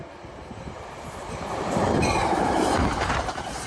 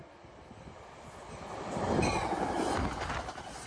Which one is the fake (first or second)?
first